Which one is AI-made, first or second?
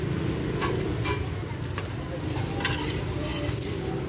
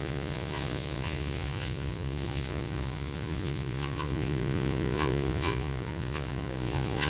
second